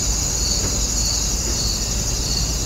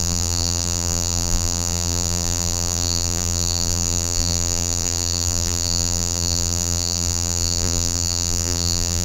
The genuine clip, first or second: first